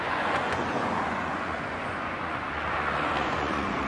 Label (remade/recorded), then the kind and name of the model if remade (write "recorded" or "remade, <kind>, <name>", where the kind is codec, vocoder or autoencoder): remade, vocoder, Vocos